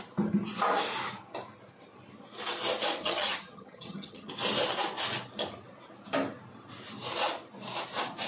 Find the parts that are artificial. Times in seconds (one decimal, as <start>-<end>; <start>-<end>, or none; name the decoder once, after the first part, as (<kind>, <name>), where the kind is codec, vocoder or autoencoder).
3.0-4.3 (vocoder, HiFi-GAN)